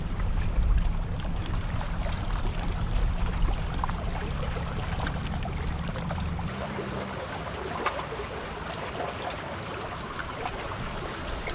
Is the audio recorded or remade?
remade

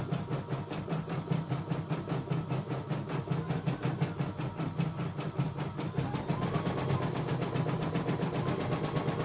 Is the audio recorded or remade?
recorded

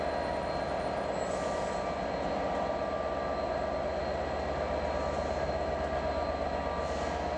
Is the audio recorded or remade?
recorded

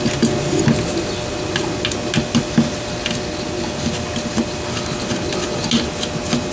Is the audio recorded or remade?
recorded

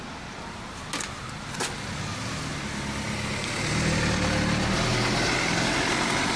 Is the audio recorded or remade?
recorded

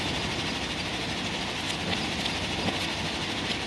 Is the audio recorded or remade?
recorded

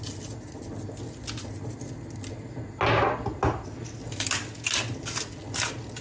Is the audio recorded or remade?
recorded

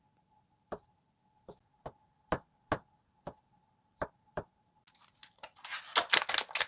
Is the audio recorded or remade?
recorded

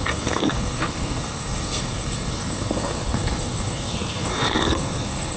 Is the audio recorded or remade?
remade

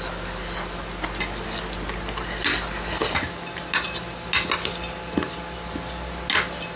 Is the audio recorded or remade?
recorded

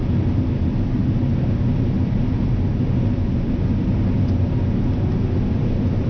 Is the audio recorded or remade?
recorded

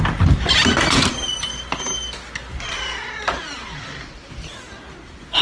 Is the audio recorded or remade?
recorded